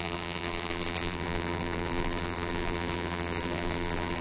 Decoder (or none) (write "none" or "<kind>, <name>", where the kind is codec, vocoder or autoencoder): vocoder, BigVGAN v2